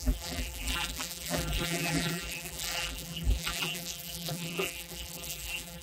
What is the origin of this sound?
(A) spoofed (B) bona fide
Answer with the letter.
A